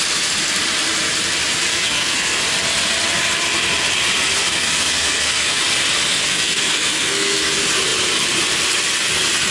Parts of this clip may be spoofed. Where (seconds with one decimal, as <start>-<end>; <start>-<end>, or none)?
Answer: 1.7-2.4; 4.5-5.6; 6.2-7.5